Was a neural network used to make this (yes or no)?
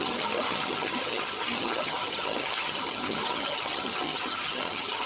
yes